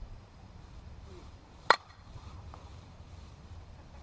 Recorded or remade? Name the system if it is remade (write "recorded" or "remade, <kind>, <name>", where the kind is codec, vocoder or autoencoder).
remade, vocoder, BigVGAN v2